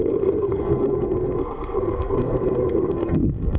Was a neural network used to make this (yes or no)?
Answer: yes